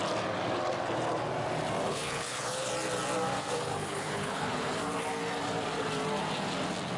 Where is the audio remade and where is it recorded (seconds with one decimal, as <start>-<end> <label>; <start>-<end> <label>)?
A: 0.0-1.9 recorded; 1.9-2.7 remade; 2.7-3.8 recorded; 3.8-4.8 remade; 4.8-7.0 recorded